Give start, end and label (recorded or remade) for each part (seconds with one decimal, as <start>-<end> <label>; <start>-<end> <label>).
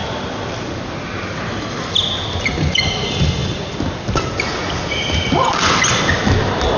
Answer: 0.0-6.8 recorded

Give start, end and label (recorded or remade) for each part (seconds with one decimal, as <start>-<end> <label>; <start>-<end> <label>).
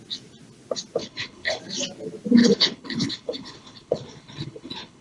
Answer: 0.0-1.0 recorded; 1.0-1.6 remade; 1.6-2.4 recorded; 2.4-5.0 remade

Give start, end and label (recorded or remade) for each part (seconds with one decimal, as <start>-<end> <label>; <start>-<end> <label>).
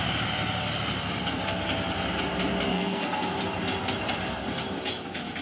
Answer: 0.0-2.7 recorded; 2.7-3.4 remade; 3.4-5.4 recorded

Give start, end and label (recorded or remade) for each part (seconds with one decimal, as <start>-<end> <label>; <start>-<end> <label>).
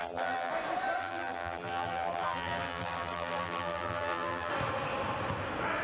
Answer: 0.0-0.5 remade; 0.5-1.0 recorded; 1.0-4.5 remade; 4.5-5.8 recorded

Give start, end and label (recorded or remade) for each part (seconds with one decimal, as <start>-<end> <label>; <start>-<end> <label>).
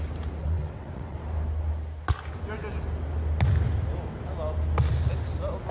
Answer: 0.0-0.4 recorded; 0.4-1.2 remade; 1.2-5.7 recorded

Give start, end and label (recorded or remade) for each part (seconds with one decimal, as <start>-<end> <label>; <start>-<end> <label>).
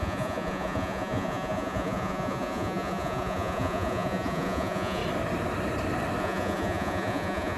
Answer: 0.0-5.0 remade; 5.0-6.2 recorded; 6.2-7.6 remade